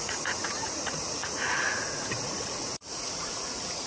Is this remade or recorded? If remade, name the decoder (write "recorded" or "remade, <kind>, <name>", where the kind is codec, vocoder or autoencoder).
remade, vocoder, Vocos